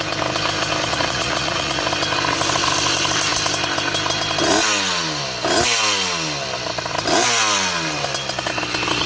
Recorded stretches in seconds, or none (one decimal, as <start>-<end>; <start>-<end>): 0.0-0.9; 1.8-9.1